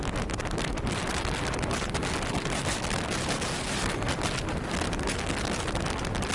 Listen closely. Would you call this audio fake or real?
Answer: real